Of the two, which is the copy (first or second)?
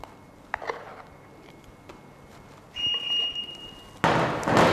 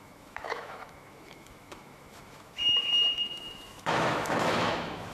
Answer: second